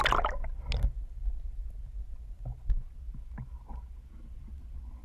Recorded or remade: recorded